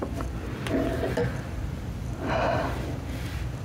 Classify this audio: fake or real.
real